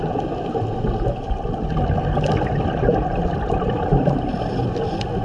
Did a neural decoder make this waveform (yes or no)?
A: no